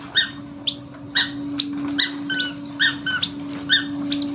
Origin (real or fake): real